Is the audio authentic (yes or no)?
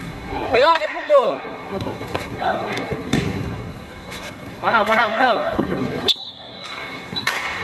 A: no